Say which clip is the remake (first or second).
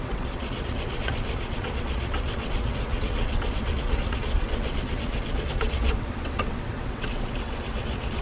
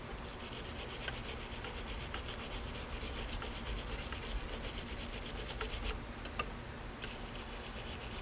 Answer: first